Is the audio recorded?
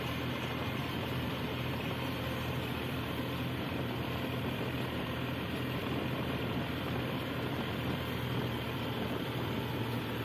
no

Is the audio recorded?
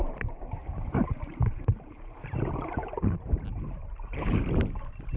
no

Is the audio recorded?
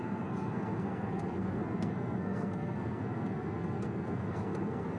no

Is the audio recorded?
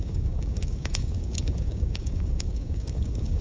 no